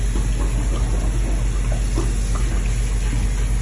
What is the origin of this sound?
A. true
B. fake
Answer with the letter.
A